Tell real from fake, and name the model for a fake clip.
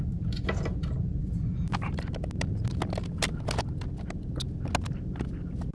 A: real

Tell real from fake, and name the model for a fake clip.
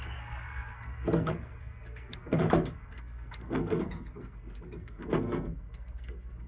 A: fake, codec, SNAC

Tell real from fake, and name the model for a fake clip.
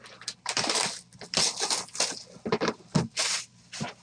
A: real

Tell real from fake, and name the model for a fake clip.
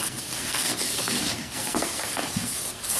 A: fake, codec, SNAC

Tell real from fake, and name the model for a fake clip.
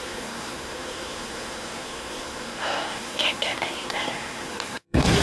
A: fake, codec, SNAC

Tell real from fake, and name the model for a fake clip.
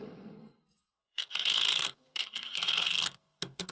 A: fake, codec, SNAC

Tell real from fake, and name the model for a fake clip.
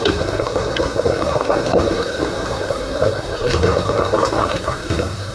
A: fake, codec, SNAC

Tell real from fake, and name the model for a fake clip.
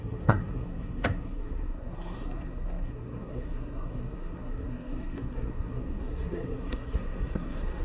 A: fake, codec, SNAC